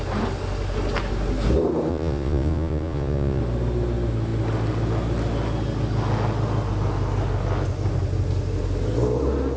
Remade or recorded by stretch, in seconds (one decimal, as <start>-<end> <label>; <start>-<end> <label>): 0.0-1.9 recorded; 1.9-3.4 remade; 3.4-9.6 recorded